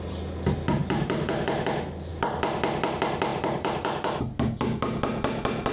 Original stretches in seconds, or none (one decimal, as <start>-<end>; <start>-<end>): 0.0-0.8; 1.7-3.3; 4.2-5.7